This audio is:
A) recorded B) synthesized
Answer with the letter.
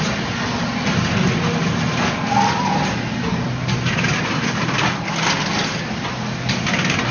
A